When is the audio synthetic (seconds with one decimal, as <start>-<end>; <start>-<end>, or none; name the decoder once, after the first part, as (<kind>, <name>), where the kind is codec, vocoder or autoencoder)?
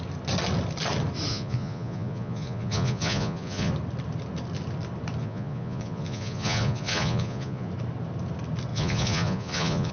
1.3-3.7 (vocoder, Vocos); 5.2-7.7; 8.7-9.9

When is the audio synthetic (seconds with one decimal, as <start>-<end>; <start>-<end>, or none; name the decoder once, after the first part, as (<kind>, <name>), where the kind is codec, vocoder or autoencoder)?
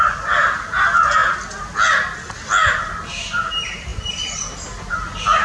none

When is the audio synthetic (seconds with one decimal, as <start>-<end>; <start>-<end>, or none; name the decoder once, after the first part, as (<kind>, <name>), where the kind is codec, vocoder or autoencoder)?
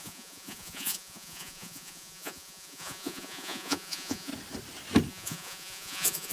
0.0-4.3 (vocoder, Vocos); 5.1-6.3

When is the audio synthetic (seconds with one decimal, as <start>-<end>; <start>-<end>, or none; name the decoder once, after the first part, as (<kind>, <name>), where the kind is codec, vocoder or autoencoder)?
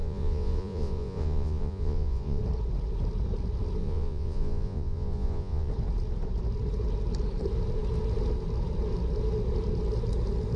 0.0-2.4 (vocoder, Vocos); 3.8-5.7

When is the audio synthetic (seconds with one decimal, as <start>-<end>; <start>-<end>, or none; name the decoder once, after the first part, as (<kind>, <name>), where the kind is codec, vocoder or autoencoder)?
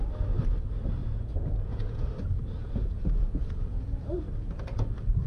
1.0-2.1 (vocoder, Vocos); 2.6-4.0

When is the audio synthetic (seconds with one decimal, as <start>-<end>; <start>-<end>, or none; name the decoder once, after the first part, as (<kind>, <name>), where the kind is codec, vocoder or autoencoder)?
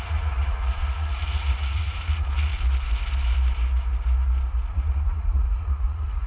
0.0-2.5 (vocoder, Vocos); 4.7-6.3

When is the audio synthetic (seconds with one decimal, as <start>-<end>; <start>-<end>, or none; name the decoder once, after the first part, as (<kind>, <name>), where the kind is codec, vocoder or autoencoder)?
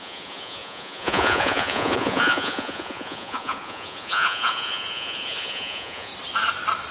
0.0-6.1 (vocoder, Vocos)